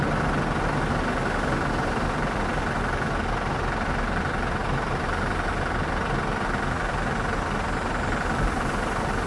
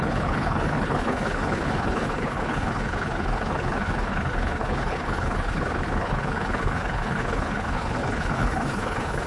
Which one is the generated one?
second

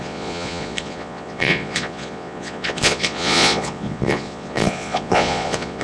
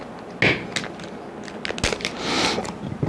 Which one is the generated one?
first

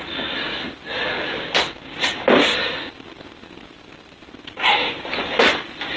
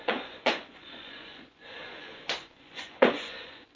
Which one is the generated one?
second